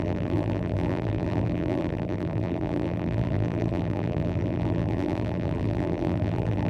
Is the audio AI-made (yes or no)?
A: yes